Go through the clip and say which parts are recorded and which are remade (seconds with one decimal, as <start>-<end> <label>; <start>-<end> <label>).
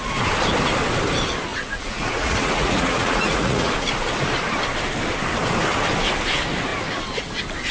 0.0-1.5 recorded; 1.5-3.7 remade; 3.7-7.7 recorded